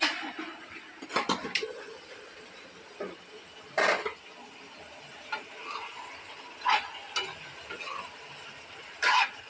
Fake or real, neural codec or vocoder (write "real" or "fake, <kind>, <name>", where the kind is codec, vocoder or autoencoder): real